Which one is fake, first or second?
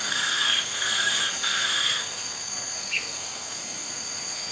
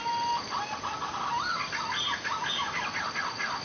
first